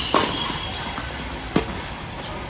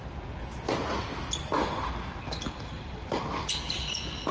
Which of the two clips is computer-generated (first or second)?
first